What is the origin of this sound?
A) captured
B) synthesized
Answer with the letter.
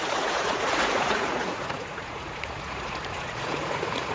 B